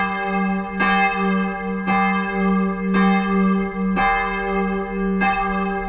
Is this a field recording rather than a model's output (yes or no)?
yes